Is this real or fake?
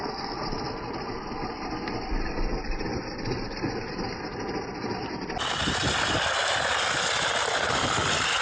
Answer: real